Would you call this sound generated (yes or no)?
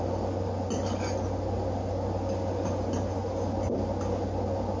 no